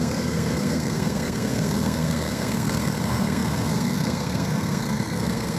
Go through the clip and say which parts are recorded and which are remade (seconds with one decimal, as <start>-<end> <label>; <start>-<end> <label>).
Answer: 0.0-5.6 remade